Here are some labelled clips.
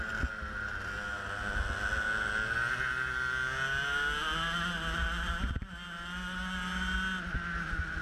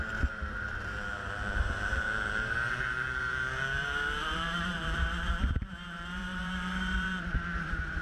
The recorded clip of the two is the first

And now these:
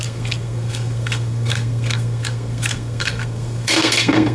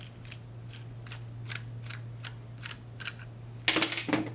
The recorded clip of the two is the second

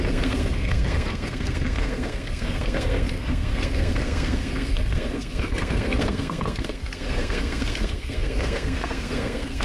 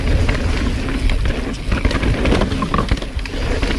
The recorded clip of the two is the second